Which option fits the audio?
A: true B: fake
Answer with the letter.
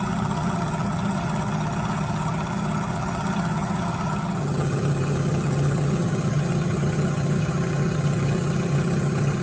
B